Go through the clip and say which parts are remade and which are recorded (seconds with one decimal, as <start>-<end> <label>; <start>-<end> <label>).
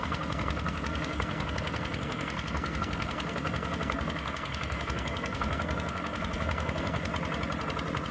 0.0-7.1 remade; 7.1-8.1 recorded